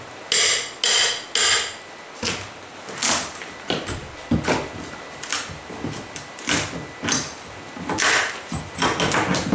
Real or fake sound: real